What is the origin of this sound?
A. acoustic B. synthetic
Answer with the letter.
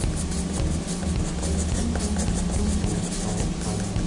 A